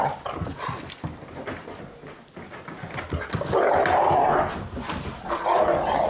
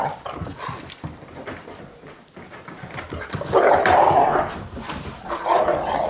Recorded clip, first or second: first